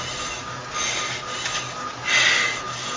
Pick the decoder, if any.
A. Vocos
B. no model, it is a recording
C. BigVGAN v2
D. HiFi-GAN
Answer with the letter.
B